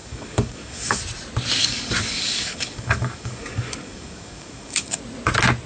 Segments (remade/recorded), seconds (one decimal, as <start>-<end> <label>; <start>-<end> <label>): 0.0-1.0 remade; 1.0-1.6 recorded; 1.6-5.0 remade; 5.0-5.7 recorded